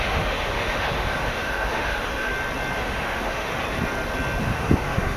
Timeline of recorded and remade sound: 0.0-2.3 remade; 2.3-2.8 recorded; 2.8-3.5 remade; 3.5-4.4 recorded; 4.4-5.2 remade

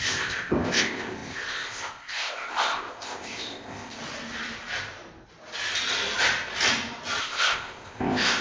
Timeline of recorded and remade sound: 0.0-4.0 remade; 4.0-7.2 recorded; 7.2-8.4 remade

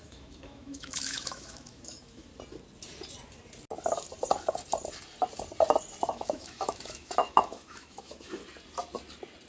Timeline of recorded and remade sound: 0.0-2.3 remade; 2.3-6.1 recorded; 6.1-8.4 remade; 8.4-9.5 recorded

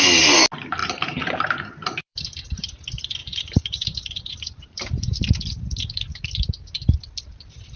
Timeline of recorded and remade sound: 0.0-0.8 recorded; 0.8-2.2 remade; 2.2-3.2 recorded; 3.2-5.4 remade; 5.4-7.8 recorded